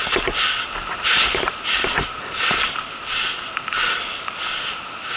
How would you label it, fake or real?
real